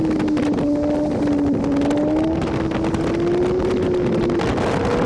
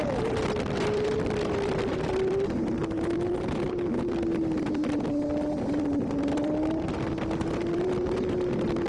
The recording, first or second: first